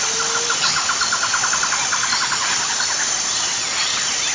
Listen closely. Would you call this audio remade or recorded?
recorded